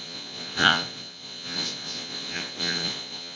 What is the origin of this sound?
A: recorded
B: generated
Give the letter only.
B